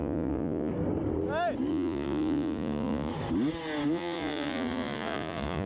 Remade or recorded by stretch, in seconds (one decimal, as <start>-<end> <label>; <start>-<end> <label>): 0.0-0.7 remade; 0.7-1.7 recorded; 1.7-3.1 remade; 3.1-3.9 recorded; 3.9-5.7 remade